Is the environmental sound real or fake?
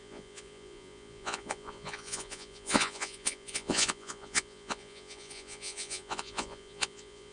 fake